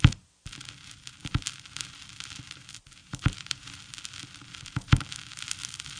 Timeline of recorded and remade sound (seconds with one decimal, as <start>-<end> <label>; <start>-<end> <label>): 0.0-3.0 recorded; 3.0-3.8 remade; 3.8-6.0 recorded